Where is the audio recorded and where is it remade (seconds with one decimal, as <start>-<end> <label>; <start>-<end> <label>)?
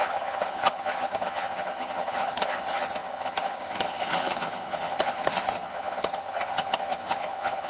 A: 0.0-7.7 remade